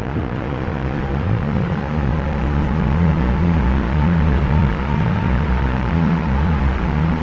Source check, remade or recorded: remade